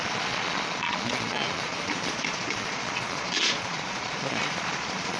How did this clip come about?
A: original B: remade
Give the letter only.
B